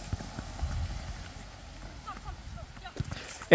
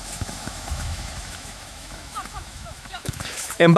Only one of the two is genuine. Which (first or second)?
first